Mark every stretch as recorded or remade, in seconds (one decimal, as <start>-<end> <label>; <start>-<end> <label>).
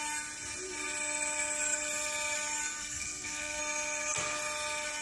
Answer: 0.0-2.8 recorded; 2.8-3.6 remade; 3.6-5.0 recorded